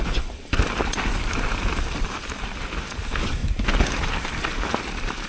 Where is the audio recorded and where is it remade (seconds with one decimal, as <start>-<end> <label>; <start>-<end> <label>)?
0.0-5.3 recorded